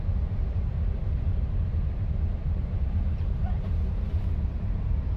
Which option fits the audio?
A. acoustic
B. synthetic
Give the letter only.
B